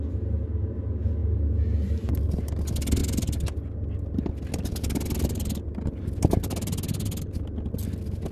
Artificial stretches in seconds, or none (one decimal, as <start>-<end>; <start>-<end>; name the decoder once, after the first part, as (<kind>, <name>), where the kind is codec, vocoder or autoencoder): none